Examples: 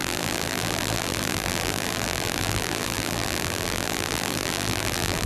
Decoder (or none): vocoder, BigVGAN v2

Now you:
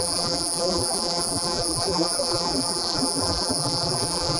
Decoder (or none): vocoder, BigVGAN v2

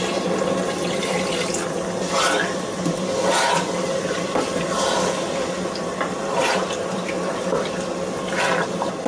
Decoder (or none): vocoder, BigVGAN v2